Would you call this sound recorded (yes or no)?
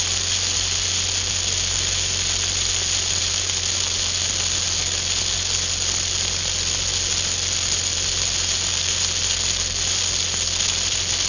yes